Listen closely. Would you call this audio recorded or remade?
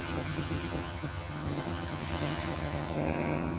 remade